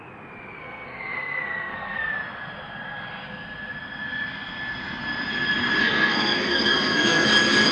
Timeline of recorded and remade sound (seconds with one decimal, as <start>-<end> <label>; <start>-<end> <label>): 0.0-0.6 recorded; 0.6-2.1 remade; 2.1-5.8 recorded; 5.8-7.3 remade; 7.3-7.7 recorded